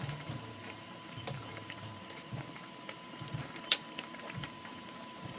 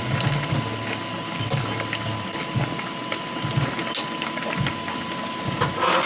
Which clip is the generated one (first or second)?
first